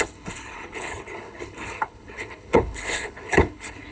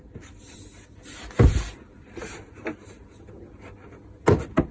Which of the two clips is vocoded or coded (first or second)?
first